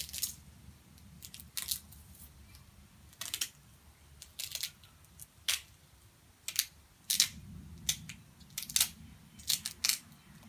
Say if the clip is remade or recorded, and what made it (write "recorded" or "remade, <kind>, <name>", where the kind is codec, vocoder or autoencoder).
recorded